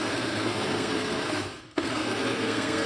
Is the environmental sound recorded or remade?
remade